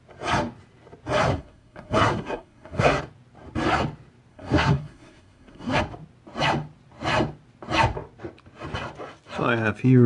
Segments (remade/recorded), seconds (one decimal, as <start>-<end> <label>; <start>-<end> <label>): 0.0-1.3 recorded; 1.3-3.0 remade; 3.0-4.3 recorded; 4.3-5.8 remade; 5.8-10.1 recorded